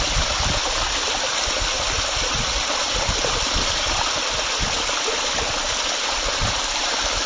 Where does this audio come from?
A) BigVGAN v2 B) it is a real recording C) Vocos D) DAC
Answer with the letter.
B